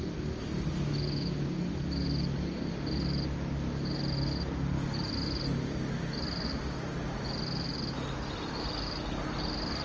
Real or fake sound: real